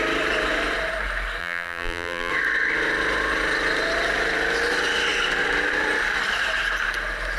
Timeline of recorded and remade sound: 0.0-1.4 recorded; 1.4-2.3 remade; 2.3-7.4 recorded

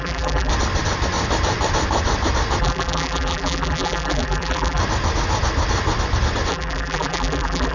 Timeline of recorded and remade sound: 0.0-0.5 remade; 0.5-2.6 recorded; 2.6-4.8 remade; 4.8-6.5 recorded; 6.5-7.7 remade

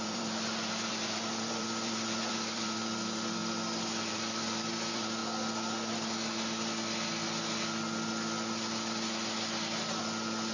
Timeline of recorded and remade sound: 0.0-3.4 remade; 3.4-4.1 recorded; 4.1-5.2 remade; 5.2-10.0 recorded; 10.0-10.5 remade

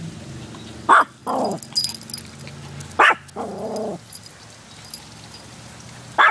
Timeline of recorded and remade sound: 0.0-6.3 recorded

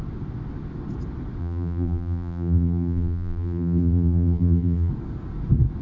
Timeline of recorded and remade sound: 0.0-1.4 recorded; 1.4-4.9 remade; 4.9-5.8 recorded

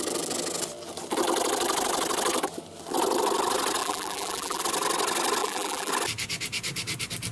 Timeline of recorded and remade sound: 0.0-3.8 recorded; 3.8-4.6 remade; 4.6-5.4 recorded; 5.4-5.9 remade; 5.9-7.3 recorded

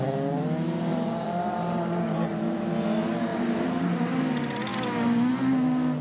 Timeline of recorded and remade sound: 0.0-0.9 recorded; 0.9-2.7 remade; 2.7-3.3 recorded; 3.3-4.2 remade; 4.2-6.0 recorded